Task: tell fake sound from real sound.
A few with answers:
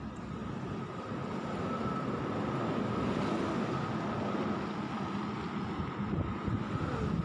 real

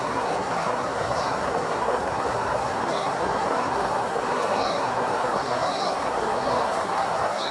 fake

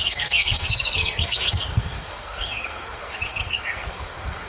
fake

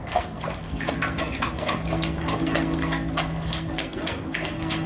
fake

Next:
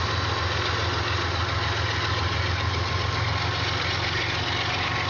real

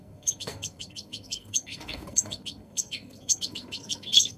fake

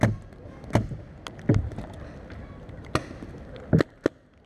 real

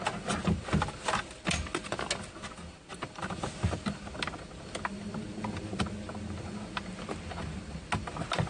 real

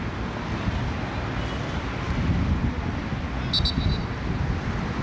real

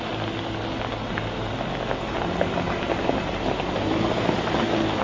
real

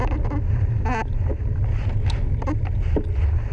real